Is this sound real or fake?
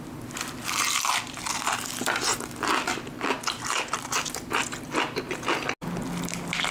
real